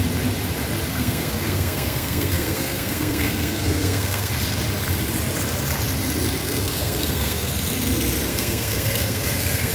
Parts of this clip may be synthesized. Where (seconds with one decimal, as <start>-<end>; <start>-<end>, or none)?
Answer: 0.9-4.3; 6.4-7.5; 8.3-9.7